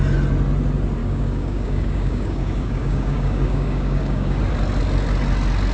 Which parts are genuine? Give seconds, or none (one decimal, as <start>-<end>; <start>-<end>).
0.0-1.0; 4.4-5.7